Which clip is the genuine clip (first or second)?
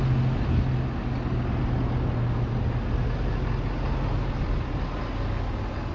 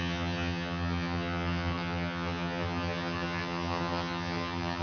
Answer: first